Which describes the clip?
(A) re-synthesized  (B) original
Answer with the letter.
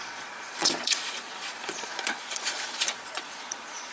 A